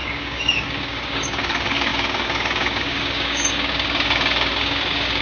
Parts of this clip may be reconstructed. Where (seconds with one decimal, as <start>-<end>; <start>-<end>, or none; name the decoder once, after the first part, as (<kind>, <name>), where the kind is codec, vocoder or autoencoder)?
0.0-5.2 (codec, DAC)